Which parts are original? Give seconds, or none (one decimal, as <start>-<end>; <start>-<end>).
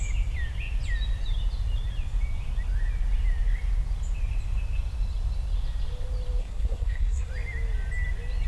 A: 0.0-6.4; 7.3-8.5